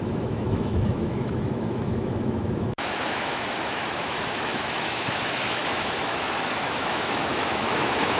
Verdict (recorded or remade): remade